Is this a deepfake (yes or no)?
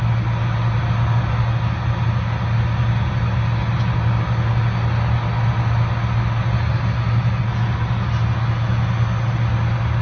no